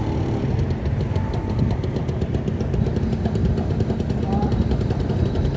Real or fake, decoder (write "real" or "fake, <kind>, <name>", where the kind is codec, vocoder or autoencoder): real